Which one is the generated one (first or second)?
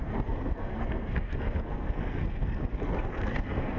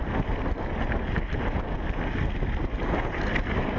first